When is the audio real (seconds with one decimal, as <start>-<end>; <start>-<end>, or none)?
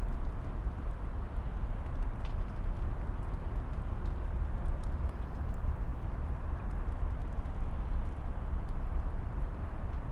1.1-5.5; 7.2-8.0